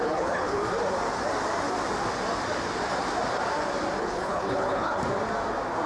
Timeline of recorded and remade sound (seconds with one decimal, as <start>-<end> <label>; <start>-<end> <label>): 0.0-0.6 remade; 0.6-4.0 recorded; 4.0-5.0 remade; 5.0-5.9 recorded